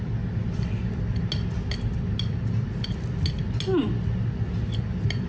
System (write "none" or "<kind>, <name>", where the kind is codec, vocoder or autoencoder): none